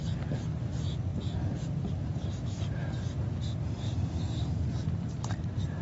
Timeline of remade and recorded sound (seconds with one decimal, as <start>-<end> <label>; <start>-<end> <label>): 0.0-5.8 recorded